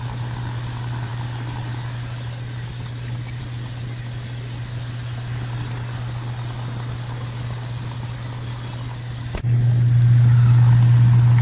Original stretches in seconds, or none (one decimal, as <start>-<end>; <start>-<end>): 0.0-11.4